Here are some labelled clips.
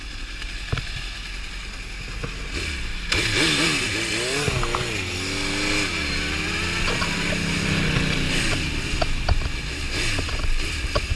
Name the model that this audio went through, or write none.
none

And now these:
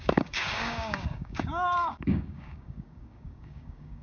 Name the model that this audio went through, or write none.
codec, DAC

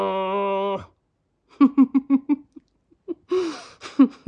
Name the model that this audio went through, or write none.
none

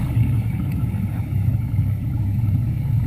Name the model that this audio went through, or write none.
codec, DAC